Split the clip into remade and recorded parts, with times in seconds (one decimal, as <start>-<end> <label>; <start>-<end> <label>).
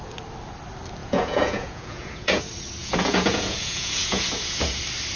0.0-1.0 recorded; 1.0-2.4 remade; 2.4-2.8 recorded; 2.8-4.8 remade; 4.8-5.2 recorded